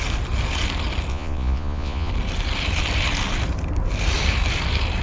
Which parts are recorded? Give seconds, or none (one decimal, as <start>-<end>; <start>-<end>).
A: 0.0-1.1; 2.1-5.0